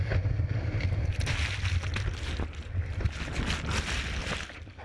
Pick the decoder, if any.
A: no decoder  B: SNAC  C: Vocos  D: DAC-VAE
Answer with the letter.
A